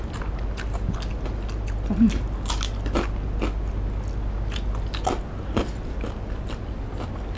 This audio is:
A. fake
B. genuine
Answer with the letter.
B